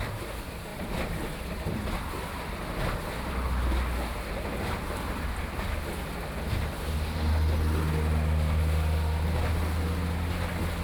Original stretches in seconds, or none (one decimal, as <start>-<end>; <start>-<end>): 0.0-10.8